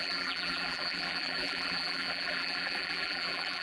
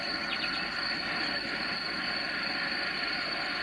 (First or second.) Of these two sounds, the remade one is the first